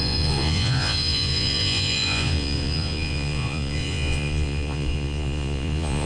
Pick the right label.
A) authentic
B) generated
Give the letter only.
B